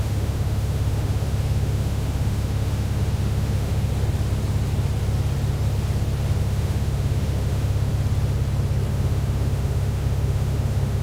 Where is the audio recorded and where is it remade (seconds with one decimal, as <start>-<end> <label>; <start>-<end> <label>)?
0.0-3.9 remade; 3.9-6.4 recorded; 6.4-7.9 remade; 7.9-8.9 recorded; 8.9-11.0 remade

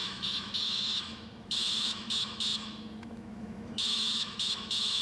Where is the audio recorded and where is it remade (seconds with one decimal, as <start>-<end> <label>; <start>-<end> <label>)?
0.0-5.0 remade

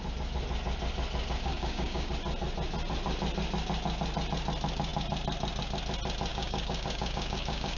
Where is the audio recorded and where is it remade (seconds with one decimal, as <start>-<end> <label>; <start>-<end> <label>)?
0.0-1.5 recorded; 1.5-2.1 remade; 2.1-6.3 recorded; 6.3-7.8 remade

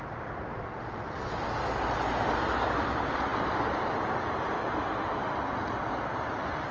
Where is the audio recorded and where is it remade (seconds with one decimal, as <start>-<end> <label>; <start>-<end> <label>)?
0.0-6.7 recorded

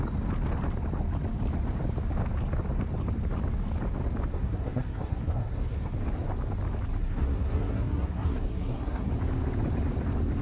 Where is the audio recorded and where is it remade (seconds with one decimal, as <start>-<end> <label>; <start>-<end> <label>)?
0.0-4.3 recorded; 4.3-5.9 remade; 5.9-7.0 recorded; 7.0-9.1 remade; 9.1-10.4 recorded

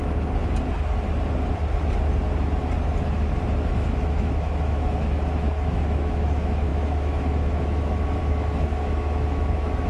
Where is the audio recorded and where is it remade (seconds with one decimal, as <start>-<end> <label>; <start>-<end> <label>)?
0.0-0.4 remade; 0.4-3.5 recorded; 3.5-9.9 remade

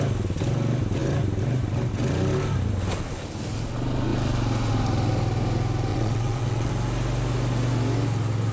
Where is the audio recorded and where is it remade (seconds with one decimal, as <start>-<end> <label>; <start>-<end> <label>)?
0.0-5.9 recorded; 5.9-6.7 remade; 6.7-8.5 recorded

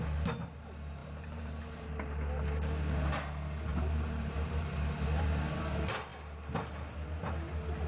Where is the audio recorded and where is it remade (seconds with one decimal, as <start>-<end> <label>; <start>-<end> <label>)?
0.0-1.0 recorded; 1.0-1.6 remade; 1.6-3.7 recorded; 3.7-5.6 remade; 5.6-7.9 recorded